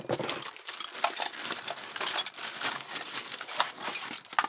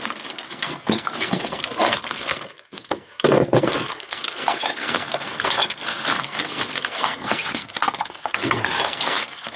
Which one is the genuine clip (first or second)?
first